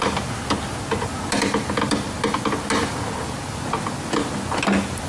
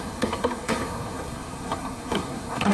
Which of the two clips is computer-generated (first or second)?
second